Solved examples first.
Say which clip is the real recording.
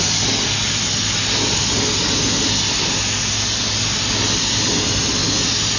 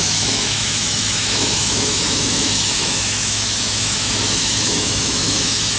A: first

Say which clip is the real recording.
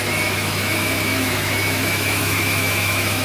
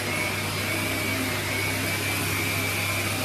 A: second